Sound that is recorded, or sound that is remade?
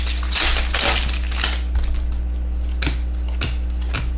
recorded